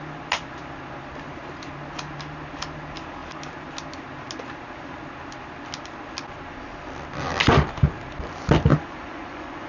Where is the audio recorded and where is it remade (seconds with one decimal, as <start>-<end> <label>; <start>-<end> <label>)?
0.0-8.7 recorded; 8.7-9.7 remade